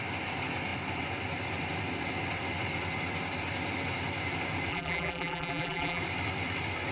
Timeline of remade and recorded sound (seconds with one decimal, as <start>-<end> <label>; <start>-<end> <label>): 0.0-4.7 recorded; 4.7-6.0 remade; 6.0-6.9 recorded